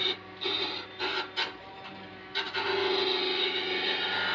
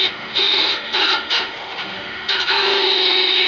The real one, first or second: first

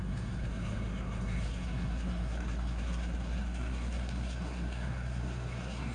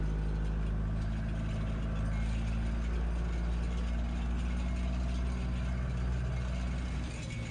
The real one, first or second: second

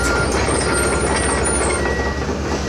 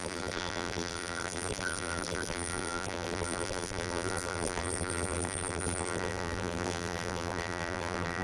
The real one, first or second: first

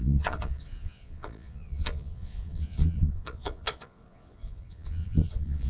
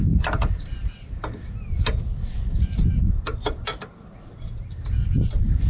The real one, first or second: second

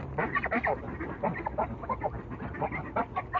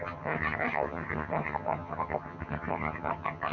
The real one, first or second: first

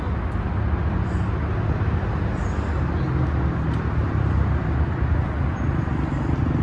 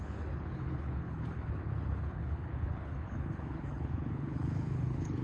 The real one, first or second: first